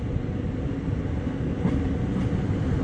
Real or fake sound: real